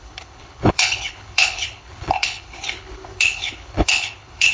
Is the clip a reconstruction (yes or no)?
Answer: yes